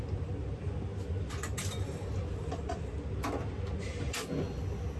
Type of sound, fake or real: real